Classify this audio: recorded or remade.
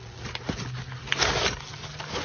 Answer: recorded